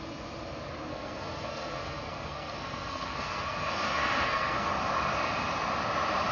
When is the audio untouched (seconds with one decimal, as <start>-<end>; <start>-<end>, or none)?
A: 0.0-0.9; 4.7-6.3